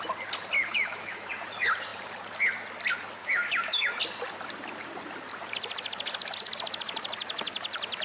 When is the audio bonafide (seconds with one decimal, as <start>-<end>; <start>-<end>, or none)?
0.0-0.7; 1.3-3.2; 4.0-8.0